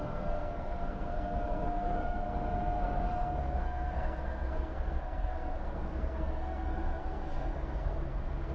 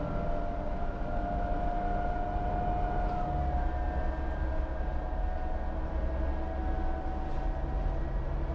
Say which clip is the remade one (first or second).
first